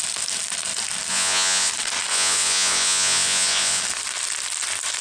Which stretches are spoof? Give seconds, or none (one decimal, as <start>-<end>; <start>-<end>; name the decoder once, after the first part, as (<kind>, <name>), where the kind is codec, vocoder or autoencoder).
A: 1.1-1.7 (vocoder, Vocos); 2.1-3.8